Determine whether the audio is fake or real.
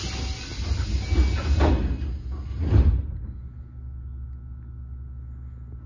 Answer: real